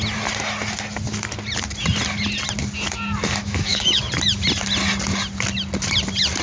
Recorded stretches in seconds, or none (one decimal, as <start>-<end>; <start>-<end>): 0.0-3.4; 4.0-6.4